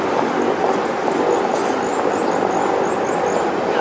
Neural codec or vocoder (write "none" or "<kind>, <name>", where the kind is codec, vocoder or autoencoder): none